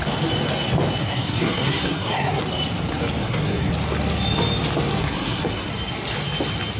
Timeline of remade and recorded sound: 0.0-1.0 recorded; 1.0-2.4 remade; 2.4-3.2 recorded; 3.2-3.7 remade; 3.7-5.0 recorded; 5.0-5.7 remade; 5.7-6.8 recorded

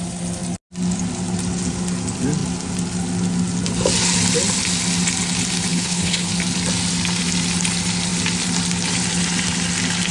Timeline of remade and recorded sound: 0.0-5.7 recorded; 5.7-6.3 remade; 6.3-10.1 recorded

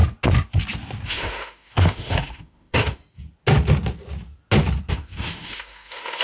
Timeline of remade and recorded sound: 0.0-1.1 recorded; 1.1-3.0 remade; 3.0-4.9 recorded; 4.9-6.2 remade

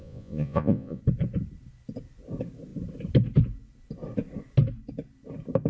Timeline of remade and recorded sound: 0.0-1.0 remade; 1.0-5.7 recorded

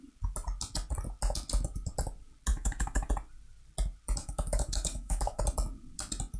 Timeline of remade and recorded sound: 0.0-2.5 recorded; 2.5-3.1 remade; 3.1-4.2 recorded; 4.2-5.4 remade; 5.4-6.4 recorded

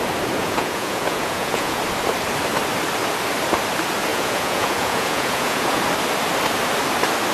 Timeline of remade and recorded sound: 0.0-0.4 recorded; 0.4-1.8 remade; 1.8-4.1 recorded; 4.1-5.8 remade; 5.8-7.3 recorded

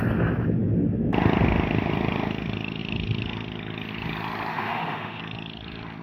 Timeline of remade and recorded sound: 0.0-4.5 recorded; 4.5-5.2 remade; 5.2-6.0 recorded